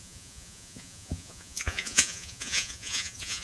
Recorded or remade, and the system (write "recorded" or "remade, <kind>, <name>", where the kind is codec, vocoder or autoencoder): remade, vocoder, Vocos